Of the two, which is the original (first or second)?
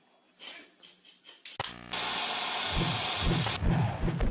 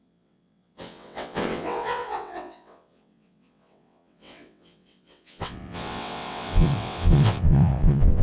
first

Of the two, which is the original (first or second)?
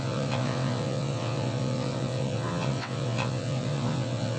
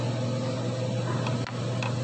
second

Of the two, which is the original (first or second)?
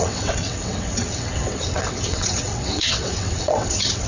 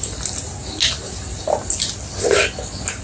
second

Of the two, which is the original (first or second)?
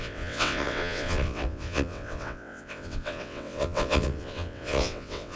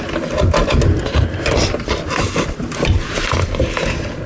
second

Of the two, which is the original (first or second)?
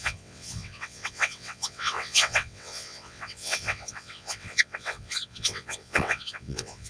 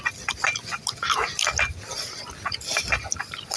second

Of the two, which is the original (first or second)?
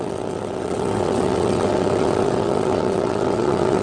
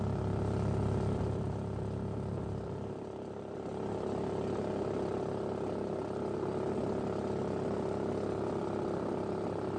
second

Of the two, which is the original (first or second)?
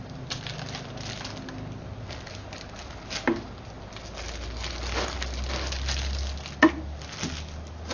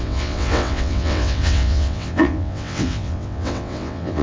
first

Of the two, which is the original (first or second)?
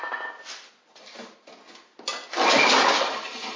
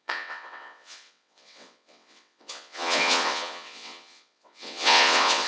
first